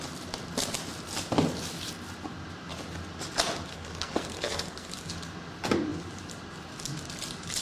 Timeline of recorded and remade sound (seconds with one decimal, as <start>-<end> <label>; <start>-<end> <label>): 0.0-3.7 recorded; 3.7-5.1 remade; 5.1-7.6 recorded